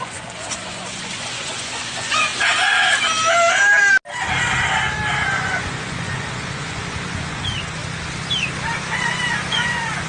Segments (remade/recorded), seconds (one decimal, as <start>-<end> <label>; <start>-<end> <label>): 0.0-2.3 remade; 2.3-5.3 recorded; 5.3-7.8 remade; 7.8-9.5 recorded; 9.5-10.1 remade